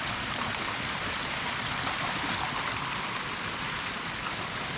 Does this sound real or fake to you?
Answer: real